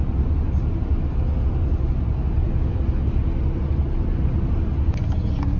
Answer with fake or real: real